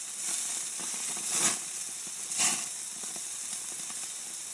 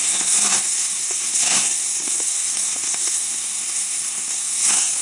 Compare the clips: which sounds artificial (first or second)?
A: second